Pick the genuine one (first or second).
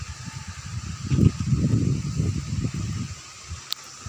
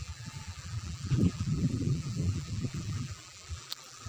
first